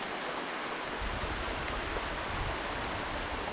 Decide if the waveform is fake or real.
real